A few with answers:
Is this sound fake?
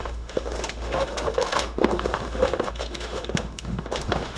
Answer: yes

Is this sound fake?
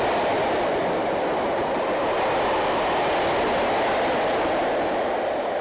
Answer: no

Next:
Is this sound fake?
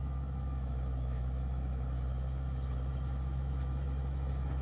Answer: yes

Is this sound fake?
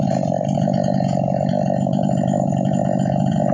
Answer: yes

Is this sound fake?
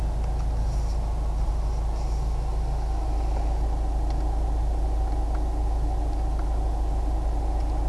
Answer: no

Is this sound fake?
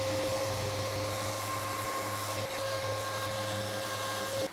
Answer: no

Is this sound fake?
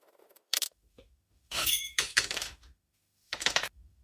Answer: yes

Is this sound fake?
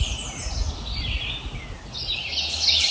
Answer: no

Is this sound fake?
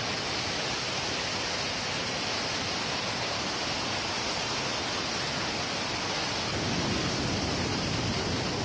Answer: no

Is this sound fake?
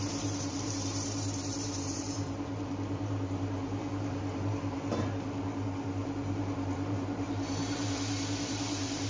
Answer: yes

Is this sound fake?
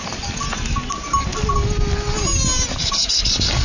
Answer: no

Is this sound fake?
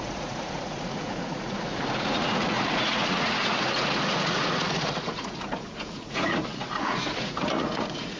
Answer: yes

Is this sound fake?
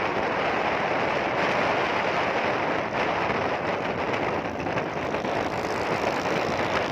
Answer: no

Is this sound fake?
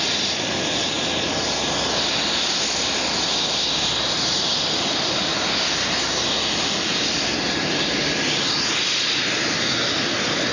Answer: no